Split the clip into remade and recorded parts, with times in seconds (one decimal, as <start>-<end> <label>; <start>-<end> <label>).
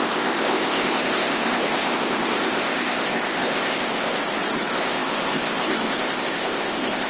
0.0-4.2 remade; 4.2-4.7 recorded; 4.7-7.1 remade